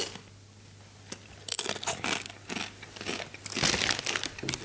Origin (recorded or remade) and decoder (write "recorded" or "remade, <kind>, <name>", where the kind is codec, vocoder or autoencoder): recorded